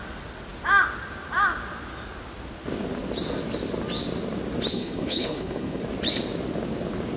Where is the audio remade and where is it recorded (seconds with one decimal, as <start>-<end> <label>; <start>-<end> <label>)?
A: 0.0-4.7 recorded; 4.7-5.8 remade; 5.8-7.2 recorded